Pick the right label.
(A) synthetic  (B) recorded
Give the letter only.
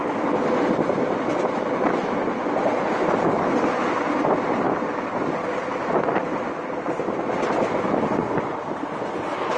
B